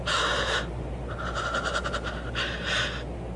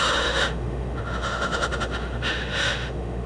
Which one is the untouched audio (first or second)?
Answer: first